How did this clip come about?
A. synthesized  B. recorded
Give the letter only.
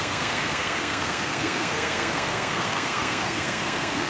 A